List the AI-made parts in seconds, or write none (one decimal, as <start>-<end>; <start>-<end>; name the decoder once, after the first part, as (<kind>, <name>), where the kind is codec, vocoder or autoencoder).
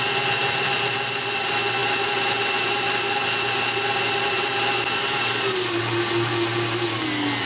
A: none